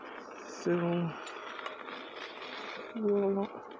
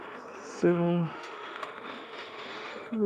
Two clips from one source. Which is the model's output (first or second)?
second